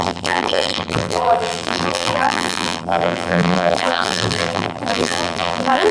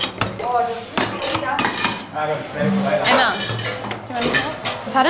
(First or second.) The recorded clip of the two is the second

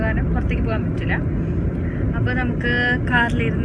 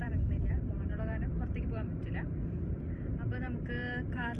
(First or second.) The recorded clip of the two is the first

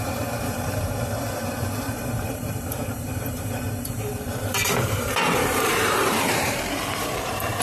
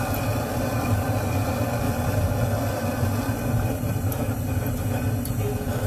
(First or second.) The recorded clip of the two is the second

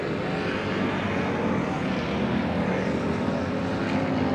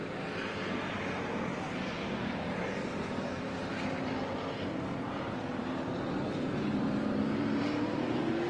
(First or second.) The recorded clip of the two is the first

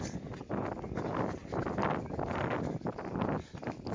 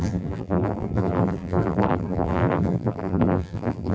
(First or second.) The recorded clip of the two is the first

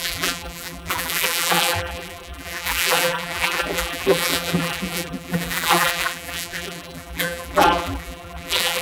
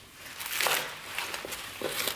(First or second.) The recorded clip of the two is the second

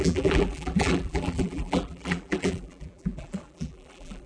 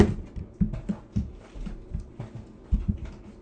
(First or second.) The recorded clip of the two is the second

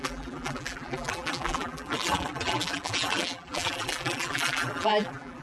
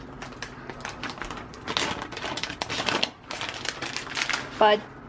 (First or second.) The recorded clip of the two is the second